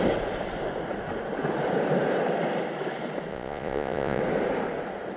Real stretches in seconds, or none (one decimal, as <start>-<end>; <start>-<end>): 0.0-3.3; 4.2-5.2